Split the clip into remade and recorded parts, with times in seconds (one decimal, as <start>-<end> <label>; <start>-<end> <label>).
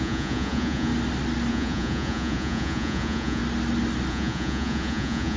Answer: 0.0-0.9 remade; 0.9-1.5 recorded; 1.5-3.4 remade; 3.4-4.1 recorded; 4.1-5.4 remade